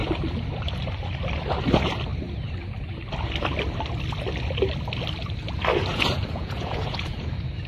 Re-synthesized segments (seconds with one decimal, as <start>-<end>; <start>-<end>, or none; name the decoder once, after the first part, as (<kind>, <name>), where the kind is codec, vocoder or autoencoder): 5.9-7.3 (vocoder, Vocos)